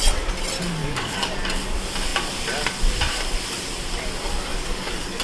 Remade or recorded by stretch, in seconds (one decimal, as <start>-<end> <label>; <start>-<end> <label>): 0.0-0.8 recorded; 0.8-1.3 remade; 1.3-4.5 recorded; 4.5-5.2 remade